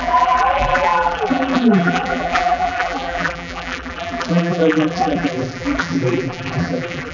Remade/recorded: remade